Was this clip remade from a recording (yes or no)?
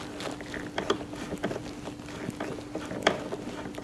no